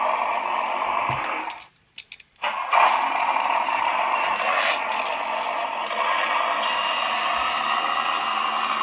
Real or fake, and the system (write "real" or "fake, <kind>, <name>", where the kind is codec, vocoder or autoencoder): real